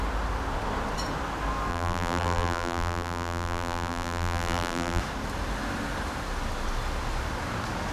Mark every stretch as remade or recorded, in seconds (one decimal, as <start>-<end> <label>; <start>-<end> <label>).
0.0-1.7 recorded; 1.7-5.0 remade; 5.0-7.9 recorded